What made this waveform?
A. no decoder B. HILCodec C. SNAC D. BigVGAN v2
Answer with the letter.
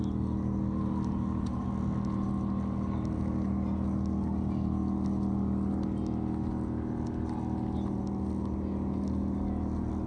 A